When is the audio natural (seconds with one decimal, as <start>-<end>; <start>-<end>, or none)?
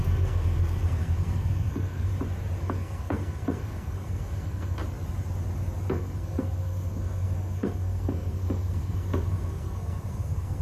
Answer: 2.1-2.6; 4.8-5.9